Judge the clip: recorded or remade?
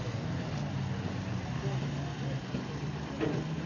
recorded